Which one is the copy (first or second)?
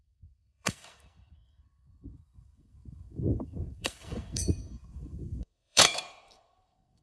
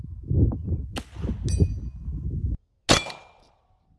first